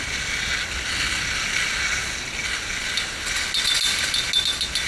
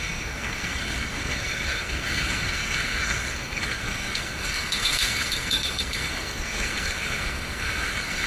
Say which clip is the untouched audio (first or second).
first